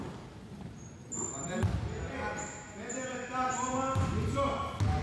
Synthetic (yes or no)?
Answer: no